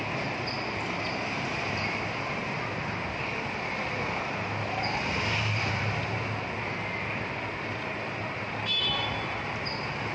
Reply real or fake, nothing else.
real